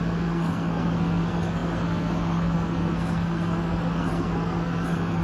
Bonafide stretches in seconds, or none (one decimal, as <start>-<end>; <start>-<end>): none